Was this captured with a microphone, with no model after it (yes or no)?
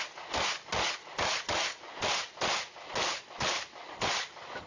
yes